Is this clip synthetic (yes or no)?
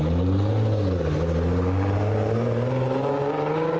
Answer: no